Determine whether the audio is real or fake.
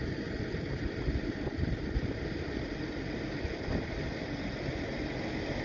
fake